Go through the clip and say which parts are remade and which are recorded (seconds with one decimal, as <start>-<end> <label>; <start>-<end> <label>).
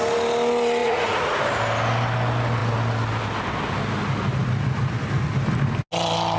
0.0-0.8 recorded; 0.8-1.4 remade; 1.4-6.4 recorded